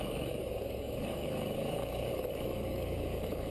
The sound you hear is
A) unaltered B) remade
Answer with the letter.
B